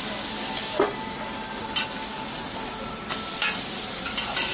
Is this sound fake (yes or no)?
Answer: no